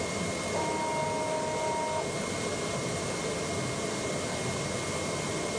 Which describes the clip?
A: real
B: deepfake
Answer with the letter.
A